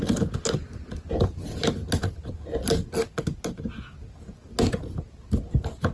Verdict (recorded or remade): recorded